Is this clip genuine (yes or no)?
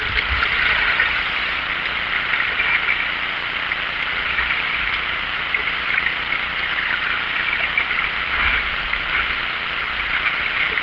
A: yes